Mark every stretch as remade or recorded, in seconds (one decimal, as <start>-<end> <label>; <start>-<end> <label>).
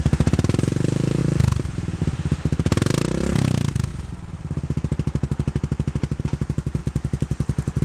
0.0-1.2 remade; 1.2-2.0 recorded; 2.0-3.9 remade; 3.9-6.2 recorded; 6.2-7.8 remade